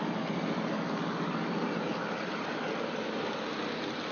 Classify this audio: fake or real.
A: real